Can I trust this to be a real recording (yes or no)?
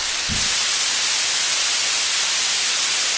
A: yes